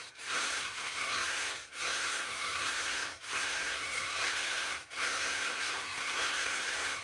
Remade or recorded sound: remade